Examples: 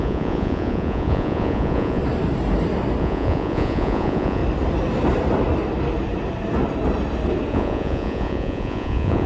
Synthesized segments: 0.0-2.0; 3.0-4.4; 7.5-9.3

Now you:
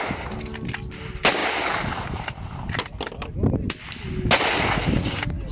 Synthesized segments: none

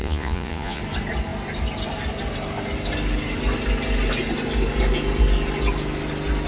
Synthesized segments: 0.0-0.8

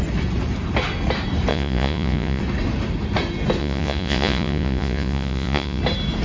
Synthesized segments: 1.5-2.4; 3.6-5.8

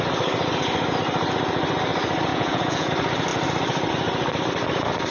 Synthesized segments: 2.3-2.9

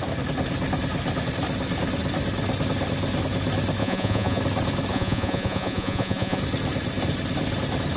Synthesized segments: 3.8-4.4; 4.9-6.4